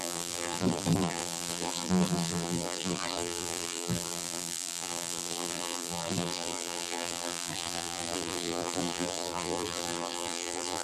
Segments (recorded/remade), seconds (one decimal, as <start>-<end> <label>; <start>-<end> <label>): 0.0-10.8 remade